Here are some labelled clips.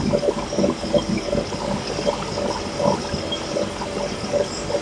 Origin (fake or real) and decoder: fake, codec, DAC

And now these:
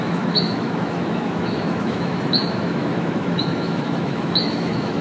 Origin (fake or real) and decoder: fake, autoencoder, DAC-VAE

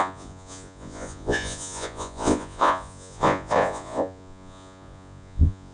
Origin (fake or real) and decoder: fake, vocoder, Vocos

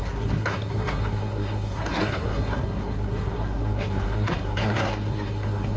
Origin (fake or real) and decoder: fake, codec, SNAC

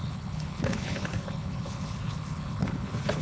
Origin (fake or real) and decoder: fake, codec, HILCodec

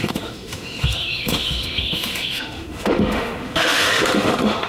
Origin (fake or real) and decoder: fake, autoencoder, DAC-VAE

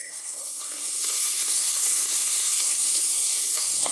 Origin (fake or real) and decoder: fake, codec, SNAC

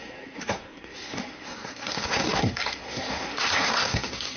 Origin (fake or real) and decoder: fake, codec, SNAC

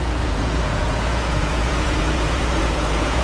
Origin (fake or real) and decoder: fake, vocoder, Vocos